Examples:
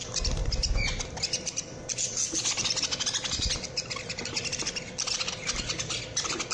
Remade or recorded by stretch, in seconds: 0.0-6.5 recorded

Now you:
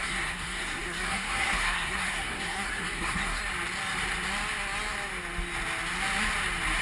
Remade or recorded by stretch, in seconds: 0.0-3.4 remade; 3.4-6.8 recorded

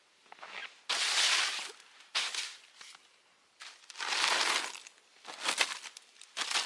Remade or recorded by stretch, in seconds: 0.0-6.7 recorded

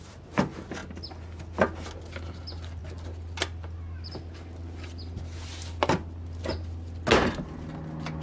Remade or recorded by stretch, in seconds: 0.0-8.2 recorded

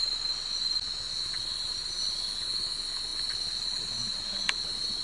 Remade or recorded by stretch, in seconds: 0.0-5.0 recorded

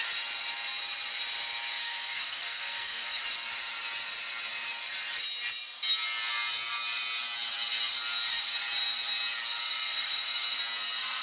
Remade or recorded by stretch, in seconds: 0.0-1.8 recorded; 1.8-3.2 remade; 3.2-11.2 recorded

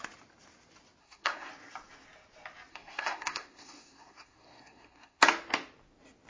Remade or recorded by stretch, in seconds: 0.0-1.0 recorded; 1.0-1.5 remade; 1.5-2.7 recorded; 2.7-5.2 remade; 5.2-6.3 recorded

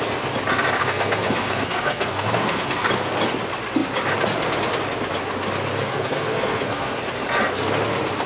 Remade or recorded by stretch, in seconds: 0.0-0.8 recorded; 0.8-2.9 remade; 2.9-5.8 recorded; 5.8-7.0 remade; 7.0-8.3 recorded